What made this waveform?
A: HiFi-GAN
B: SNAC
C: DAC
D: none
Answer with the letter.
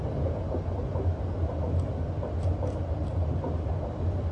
D